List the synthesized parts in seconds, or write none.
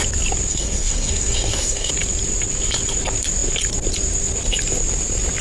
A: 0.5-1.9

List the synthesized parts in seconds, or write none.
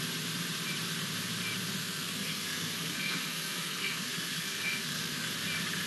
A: 1.8-5.3